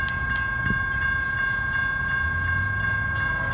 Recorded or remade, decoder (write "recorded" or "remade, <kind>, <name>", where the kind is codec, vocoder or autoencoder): recorded